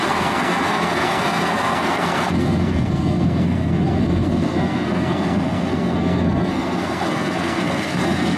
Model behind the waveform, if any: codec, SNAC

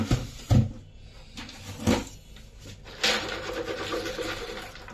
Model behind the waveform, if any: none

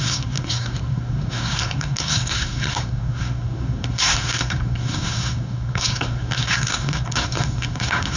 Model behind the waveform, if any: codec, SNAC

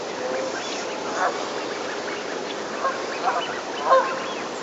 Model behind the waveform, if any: none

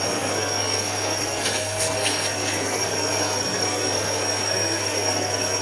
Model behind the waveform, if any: codec, SNAC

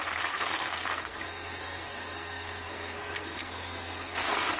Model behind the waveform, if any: codec, SNAC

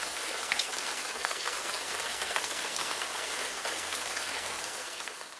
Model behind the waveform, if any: codec, SNAC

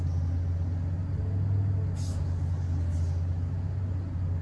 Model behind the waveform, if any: none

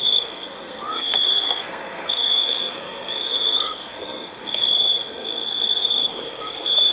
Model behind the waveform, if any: codec, SNAC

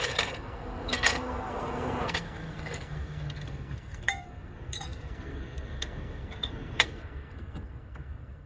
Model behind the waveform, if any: codec, SNAC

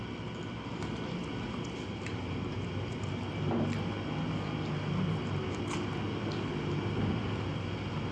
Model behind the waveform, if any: none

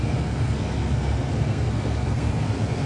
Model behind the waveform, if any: codec, SNAC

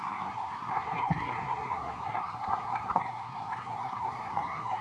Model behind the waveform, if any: codec, SNAC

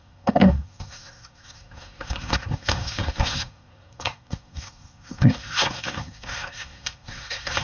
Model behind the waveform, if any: codec, SNAC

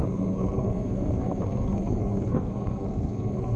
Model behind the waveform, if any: codec, SNAC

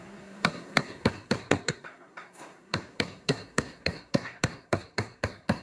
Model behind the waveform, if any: codec, SNAC